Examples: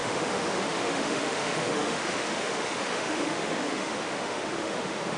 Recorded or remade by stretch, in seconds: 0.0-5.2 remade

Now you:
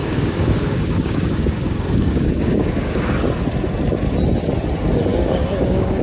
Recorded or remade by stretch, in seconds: 0.0-3.1 remade; 3.1-5.1 recorded; 5.1-6.0 remade

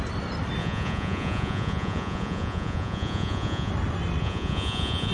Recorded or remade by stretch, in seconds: 0.0-0.6 recorded; 0.6-3.7 remade; 3.7-4.2 recorded; 4.2-5.1 remade

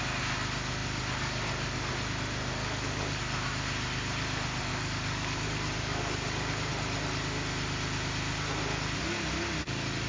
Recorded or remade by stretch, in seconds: 0.0-2.6 recorded; 2.6-3.2 remade; 3.2-4.7 recorded; 4.7-6.7 remade; 6.7-10.1 recorded

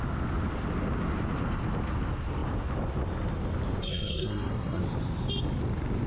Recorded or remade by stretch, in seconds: 0.0-3.8 recorded; 3.8-4.8 remade; 4.8-6.1 recorded

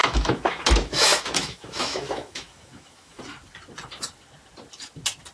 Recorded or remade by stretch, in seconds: 0.0-3.2 remade; 3.2-5.3 recorded